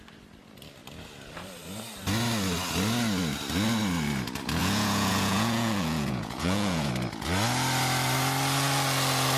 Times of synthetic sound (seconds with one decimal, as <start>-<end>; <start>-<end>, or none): 4.6-6.9